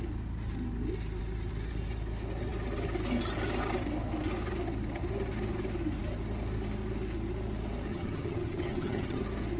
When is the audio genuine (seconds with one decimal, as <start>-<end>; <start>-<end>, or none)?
0.0-7.9; 9.2-9.6